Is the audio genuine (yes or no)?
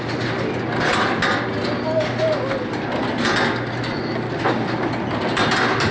yes